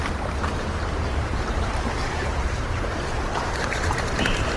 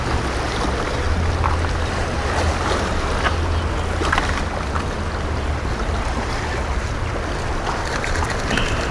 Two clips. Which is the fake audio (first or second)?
first